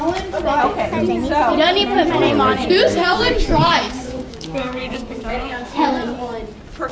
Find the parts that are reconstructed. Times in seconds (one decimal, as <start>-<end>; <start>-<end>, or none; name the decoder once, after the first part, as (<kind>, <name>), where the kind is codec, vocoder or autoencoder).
2.9-5.9 (codec, DAC)